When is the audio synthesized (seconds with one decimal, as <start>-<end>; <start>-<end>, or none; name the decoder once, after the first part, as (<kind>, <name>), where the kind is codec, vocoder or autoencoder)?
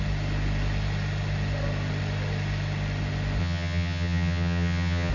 3.4-5.1 (vocoder, HiFi-GAN)